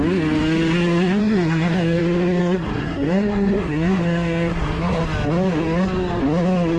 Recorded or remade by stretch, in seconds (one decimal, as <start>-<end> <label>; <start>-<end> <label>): 0.0-1.2 recorded; 1.2-2.0 remade; 2.0-2.4 recorded; 2.4-5.0 remade; 5.0-6.8 recorded